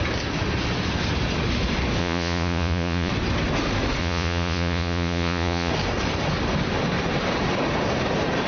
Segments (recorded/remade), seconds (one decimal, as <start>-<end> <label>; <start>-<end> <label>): 0.0-2.0 recorded; 2.0-3.1 remade; 3.1-4.0 recorded; 4.0-5.7 remade; 5.7-8.5 recorded